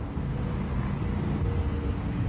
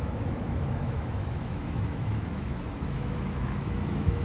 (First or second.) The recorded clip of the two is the first